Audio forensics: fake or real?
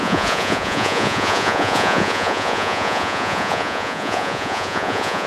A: fake